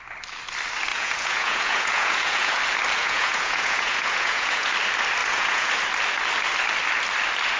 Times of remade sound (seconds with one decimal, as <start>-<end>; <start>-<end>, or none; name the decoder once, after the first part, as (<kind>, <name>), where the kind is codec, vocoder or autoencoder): 0.9-2.6 (vocoder, Vocos); 3.0-4.7; 5.2-5.7